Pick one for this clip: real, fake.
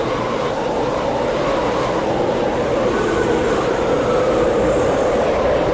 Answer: real